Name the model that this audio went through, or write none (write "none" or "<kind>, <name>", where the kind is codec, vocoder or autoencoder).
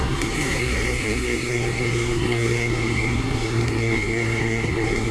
codec, SNAC